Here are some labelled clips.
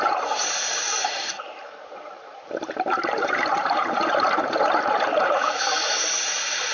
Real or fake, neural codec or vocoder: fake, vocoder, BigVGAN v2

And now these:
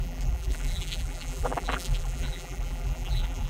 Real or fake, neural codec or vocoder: fake, vocoder, BigVGAN v2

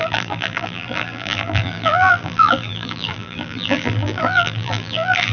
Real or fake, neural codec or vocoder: fake, vocoder, BigVGAN v2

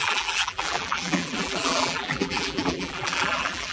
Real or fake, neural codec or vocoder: fake, vocoder, BigVGAN v2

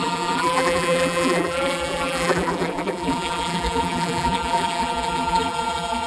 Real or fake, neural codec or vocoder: fake, vocoder, BigVGAN v2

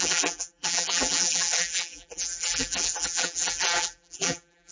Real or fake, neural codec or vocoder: fake, vocoder, BigVGAN v2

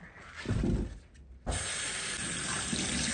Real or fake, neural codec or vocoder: real